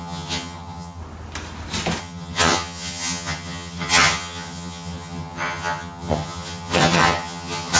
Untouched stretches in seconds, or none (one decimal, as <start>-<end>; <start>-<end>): 1.0-2.0